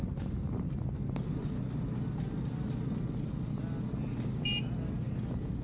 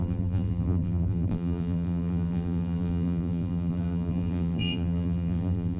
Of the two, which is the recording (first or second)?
first